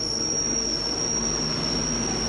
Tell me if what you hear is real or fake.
real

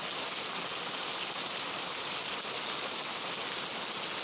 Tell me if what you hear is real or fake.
real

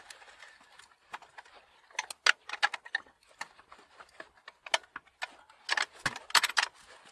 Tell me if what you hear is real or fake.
real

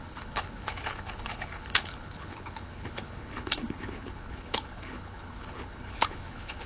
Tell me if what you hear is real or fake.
fake